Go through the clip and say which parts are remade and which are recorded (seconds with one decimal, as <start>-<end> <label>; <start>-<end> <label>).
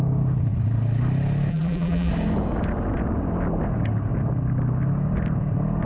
0.0-1.5 recorded; 1.5-2.1 remade; 2.1-5.9 recorded